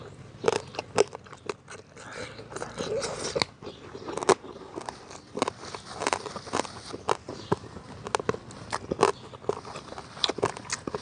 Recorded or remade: recorded